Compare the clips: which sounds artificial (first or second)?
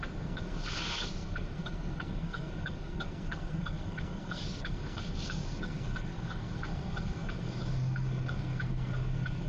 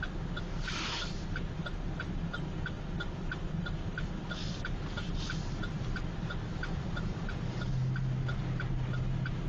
first